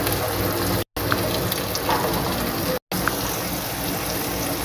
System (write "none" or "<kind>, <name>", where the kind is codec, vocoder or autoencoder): none